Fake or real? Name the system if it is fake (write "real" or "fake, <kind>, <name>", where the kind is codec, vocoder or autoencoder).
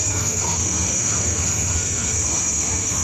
fake, codec, SNAC